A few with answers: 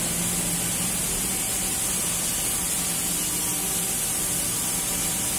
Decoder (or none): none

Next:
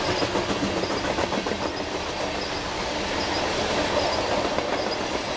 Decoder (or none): none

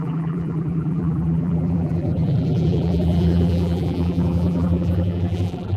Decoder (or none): vocoder, BigVGAN v2